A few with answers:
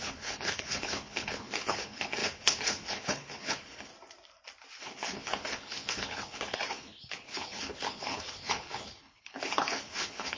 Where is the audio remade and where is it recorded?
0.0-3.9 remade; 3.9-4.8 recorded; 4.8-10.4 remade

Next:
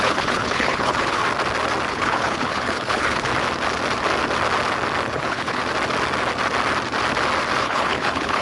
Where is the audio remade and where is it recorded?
0.0-1.2 remade; 1.2-1.9 recorded; 1.9-3.3 remade; 3.3-5.1 recorded; 5.1-5.6 remade; 5.6-7.6 recorded; 7.6-8.4 remade

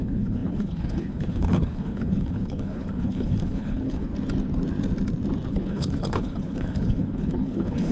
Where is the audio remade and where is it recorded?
0.0-4.1 remade; 4.1-5.5 recorded; 5.5-7.9 remade

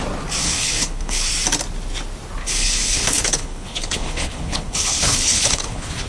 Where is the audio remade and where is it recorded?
0.0-0.4 recorded; 0.4-1.3 remade; 1.3-2.4 recorded; 2.4-6.1 remade

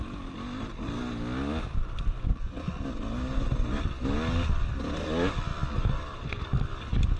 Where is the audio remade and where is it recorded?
0.0-7.2 recorded

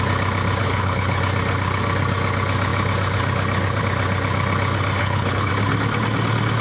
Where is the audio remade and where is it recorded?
0.0-0.6 recorded; 0.6-1.2 remade; 1.2-5.0 recorded; 5.0-5.5 remade; 5.5-6.6 recorded

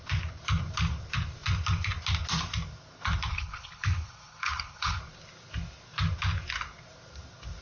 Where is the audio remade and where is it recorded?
0.0-3.3 recorded; 3.3-5.0 remade; 5.0-7.6 recorded

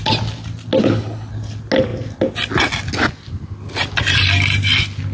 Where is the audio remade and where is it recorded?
0.0-0.8 recorded; 0.8-1.3 remade; 1.3-5.1 recorded